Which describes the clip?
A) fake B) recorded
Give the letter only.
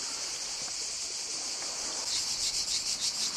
B